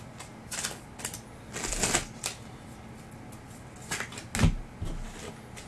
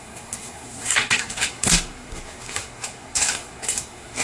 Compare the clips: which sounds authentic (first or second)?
first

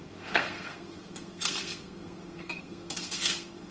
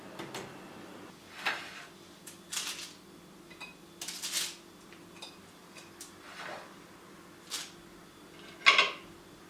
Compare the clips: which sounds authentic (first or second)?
second